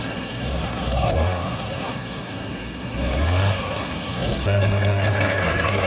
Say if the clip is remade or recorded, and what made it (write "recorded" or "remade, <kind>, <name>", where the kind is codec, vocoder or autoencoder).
remade, codec, SNAC